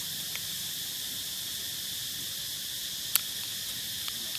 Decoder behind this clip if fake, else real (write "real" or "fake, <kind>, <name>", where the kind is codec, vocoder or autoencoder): real